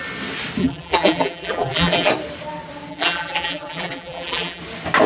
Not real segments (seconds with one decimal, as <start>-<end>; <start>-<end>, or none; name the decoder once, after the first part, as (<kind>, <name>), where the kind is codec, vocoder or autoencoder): 0.6-2.1 (vocoder, BigVGAN v2); 2.9-4.6